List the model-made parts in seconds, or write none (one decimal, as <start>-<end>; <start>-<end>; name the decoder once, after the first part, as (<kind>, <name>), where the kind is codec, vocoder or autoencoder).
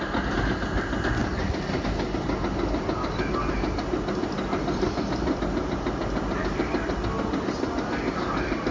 none